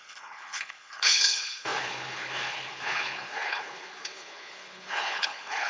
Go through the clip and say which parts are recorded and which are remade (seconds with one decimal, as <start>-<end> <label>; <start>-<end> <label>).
0.0-5.7 remade

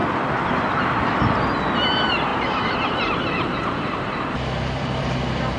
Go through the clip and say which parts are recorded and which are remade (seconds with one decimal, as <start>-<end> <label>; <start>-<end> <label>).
0.0-0.5 remade; 0.5-2.3 recorded; 2.3-5.0 remade; 5.0-5.6 recorded

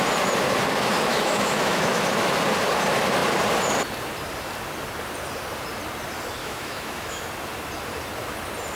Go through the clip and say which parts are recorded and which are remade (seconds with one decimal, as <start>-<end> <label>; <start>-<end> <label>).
0.0-1.1 recorded; 1.1-2.0 remade; 2.0-6.4 recorded; 6.4-7.2 remade; 7.2-8.8 recorded

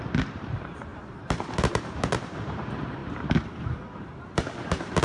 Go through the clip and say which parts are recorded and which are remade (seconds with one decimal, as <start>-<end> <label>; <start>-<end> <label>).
0.0-5.0 remade

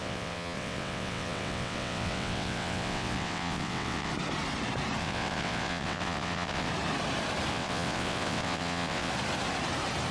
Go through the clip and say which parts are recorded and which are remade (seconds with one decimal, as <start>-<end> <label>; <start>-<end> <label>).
0.0-4.1 remade; 4.1-5.0 recorded; 5.0-6.7 remade; 6.7-7.5 recorded; 7.5-9.1 remade; 9.1-10.1 recorded

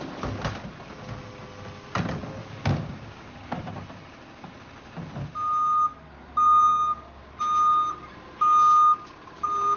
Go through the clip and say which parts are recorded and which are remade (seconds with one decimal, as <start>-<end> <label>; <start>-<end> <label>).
0.0-2.4 recorded; 2.4-3.7 remade; 3.7-6.7 recorded; 6.7-7.4 remade; 7.4-9.8 recorded

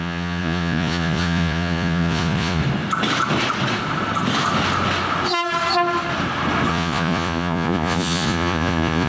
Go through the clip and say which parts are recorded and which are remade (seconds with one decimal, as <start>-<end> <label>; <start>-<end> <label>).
0.0-2.6 remade; 2.6-6.7 recorded; 6.7-9.1 remade

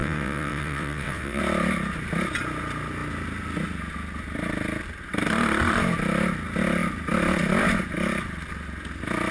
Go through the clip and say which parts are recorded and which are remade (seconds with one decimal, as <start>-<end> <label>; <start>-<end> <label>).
0.0-1.4 remade; 1.4-9.3 recorded